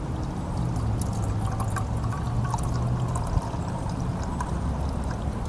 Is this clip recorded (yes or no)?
yes